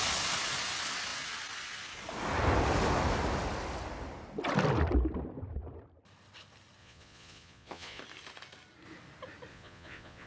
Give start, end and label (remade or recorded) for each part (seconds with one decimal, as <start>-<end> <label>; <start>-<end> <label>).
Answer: 0.0-6.8 recorded; 6.8-8.0 remade; 8.0-9.5 recorded; 9.5-10.3 remade